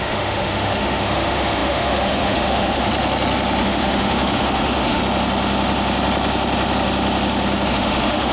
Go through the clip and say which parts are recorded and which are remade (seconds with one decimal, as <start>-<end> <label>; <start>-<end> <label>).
0.0-2.9 remade; 2.9-3.6 recorded; 3.6-5.0 remade; 5.0-7.7 recorded; 7.7-8.3 remade